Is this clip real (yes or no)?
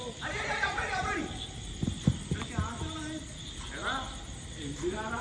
yes